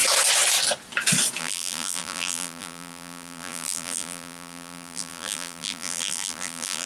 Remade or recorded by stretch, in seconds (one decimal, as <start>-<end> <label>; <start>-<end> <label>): 0.0-1.4 recorded; 1.4-6.9 remade